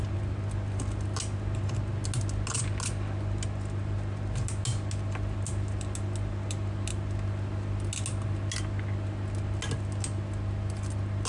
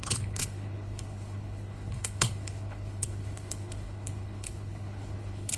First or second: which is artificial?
second